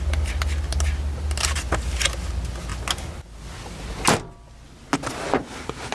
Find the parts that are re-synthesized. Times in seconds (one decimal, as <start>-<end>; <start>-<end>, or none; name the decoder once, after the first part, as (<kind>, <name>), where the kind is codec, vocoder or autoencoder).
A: none